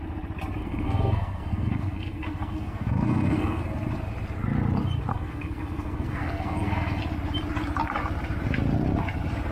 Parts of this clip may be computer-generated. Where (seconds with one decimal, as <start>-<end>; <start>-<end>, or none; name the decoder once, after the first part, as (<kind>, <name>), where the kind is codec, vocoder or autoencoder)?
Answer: 0.6-3.6 (codec, SNAC); 5.1-7.0